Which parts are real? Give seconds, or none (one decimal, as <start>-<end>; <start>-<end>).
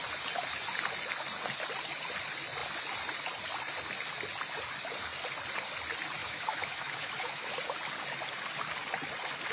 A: 0.0-6.2; 7.5-9.5